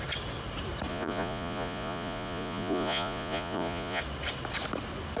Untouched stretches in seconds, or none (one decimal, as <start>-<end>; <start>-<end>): 0.0-0.9; 4.0-5.2